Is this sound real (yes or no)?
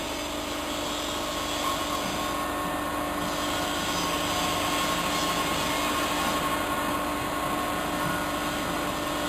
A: yes